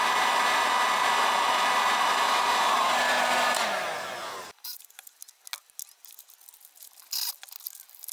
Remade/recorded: recorded